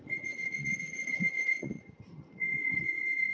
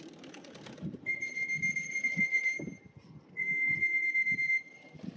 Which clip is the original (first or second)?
second